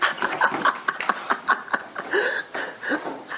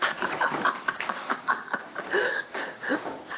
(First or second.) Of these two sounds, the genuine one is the first